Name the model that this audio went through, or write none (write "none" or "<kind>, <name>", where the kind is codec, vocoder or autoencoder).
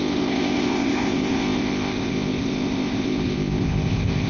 codec, ZipCodec